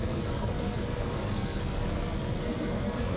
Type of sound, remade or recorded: remade